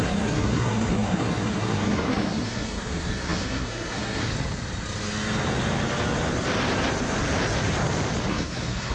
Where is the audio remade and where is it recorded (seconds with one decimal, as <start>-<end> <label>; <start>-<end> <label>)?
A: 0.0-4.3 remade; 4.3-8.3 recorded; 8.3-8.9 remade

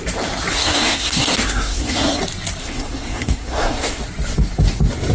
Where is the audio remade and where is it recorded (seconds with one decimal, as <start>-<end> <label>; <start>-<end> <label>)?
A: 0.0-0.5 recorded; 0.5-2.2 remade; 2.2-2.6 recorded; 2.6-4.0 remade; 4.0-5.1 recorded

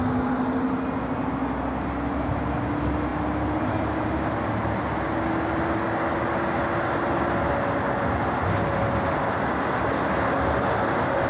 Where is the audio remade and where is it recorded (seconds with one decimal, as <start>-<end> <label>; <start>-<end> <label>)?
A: 0.0-11.3 recorded

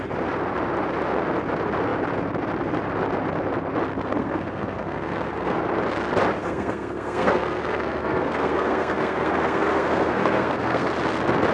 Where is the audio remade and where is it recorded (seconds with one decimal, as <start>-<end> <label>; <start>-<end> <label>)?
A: 0.0-4.2 recorded; 4.2-5.6 remade; 5.6-6.4 recorded; 6.4-10.9 remade; 10.9-11.5 recorded